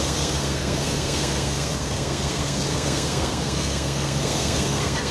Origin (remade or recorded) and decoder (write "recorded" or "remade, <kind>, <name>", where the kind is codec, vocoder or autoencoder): remade, codec, SNAC